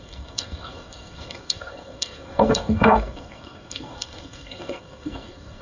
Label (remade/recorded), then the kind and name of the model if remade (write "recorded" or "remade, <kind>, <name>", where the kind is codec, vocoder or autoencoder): remade, codec, SNAC